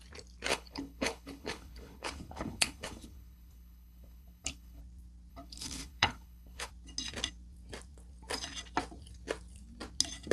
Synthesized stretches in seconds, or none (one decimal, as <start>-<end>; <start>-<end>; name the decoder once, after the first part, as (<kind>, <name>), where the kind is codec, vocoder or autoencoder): 0.5-4.8 (codec, HILCodec); 5.3-6.7